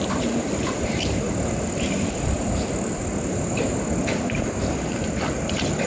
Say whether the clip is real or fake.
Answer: real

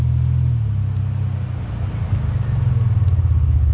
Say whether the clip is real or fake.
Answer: real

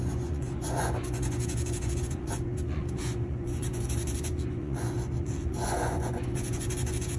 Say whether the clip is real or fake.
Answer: fake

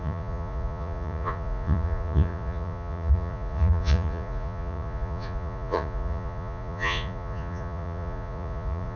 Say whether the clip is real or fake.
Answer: fake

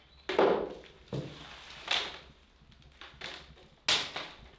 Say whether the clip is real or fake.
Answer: real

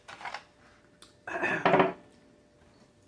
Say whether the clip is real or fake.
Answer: real